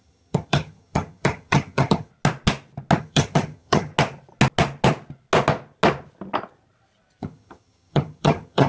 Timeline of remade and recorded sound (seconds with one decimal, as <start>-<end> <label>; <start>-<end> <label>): 0.0-2.1 remade; 2.1-3.0 recorded; 3.0-3.9 remade; 3.9-7.2 recorded; 7.2-8.7 remade